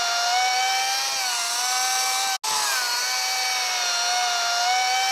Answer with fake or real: real